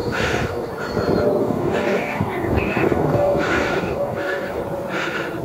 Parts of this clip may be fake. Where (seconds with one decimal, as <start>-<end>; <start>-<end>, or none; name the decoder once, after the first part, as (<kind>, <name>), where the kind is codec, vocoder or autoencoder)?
0.0-0.7 (codec, DAC); 1.4-4.6